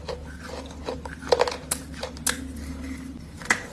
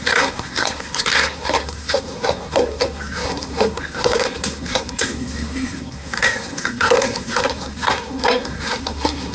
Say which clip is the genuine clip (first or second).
first